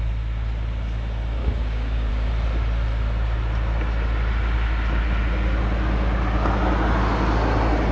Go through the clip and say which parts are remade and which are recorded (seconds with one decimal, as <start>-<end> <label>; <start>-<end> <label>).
0.0-1.4 recorded; 1.4-2.1 remade; 2.1-7.9 recorded